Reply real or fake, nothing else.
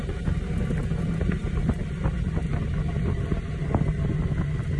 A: real